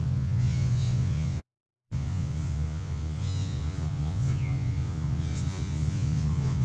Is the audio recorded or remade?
remade